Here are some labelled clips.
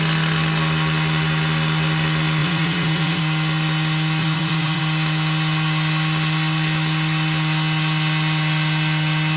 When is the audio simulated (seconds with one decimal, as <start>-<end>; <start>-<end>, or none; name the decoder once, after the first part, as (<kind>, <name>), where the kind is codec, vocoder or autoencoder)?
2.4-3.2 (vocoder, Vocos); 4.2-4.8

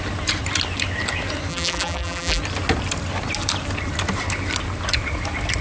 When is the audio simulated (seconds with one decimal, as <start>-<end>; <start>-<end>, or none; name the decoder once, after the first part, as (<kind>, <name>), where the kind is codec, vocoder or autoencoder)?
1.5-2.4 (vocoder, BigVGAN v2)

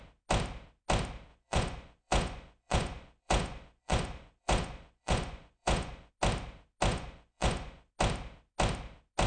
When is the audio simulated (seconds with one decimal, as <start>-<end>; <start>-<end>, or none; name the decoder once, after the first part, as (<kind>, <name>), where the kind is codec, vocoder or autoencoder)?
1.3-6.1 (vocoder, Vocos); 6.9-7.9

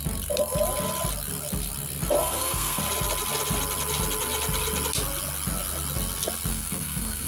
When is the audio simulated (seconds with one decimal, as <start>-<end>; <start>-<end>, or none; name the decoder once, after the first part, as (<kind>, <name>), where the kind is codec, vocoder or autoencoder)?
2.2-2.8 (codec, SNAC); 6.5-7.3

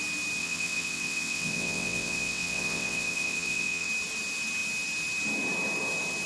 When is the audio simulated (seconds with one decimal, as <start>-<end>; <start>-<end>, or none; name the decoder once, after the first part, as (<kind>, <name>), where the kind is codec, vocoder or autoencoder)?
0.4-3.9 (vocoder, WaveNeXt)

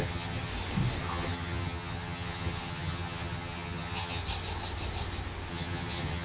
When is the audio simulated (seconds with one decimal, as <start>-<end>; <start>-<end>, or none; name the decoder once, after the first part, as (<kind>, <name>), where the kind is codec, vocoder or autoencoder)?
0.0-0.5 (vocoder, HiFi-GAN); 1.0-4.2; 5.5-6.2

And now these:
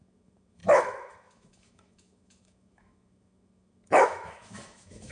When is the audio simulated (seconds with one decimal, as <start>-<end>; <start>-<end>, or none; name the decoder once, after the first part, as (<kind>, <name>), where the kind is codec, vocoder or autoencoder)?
0.0-5.1 (autoencoder, DAC-VAE)